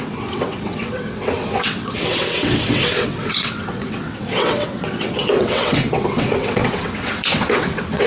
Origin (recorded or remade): remade